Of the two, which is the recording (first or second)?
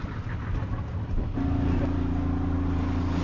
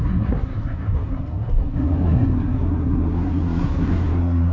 first